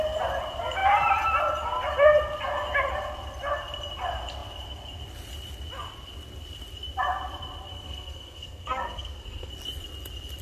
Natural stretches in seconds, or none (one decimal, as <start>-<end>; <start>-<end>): 0.0-7.7; 9.5-10.4